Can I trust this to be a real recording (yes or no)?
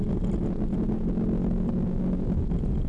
yes